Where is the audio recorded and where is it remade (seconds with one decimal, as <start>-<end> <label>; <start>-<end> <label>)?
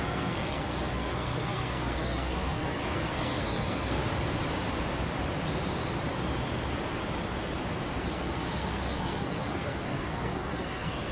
0.0-4.0 remade; 4.0-8.0 recorded; 8.0-11.1 remade